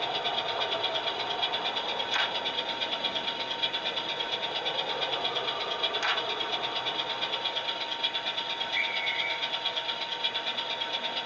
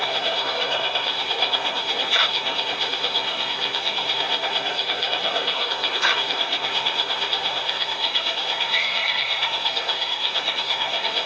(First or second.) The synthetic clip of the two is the second